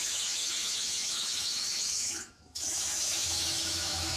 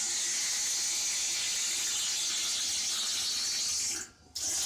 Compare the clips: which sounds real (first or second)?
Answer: second